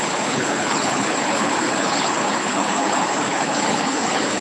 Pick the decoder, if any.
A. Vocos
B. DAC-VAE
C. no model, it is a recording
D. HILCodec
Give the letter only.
D